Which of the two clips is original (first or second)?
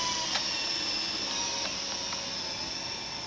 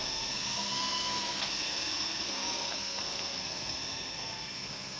first